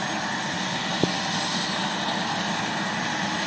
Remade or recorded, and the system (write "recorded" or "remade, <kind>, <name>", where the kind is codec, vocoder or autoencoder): recorded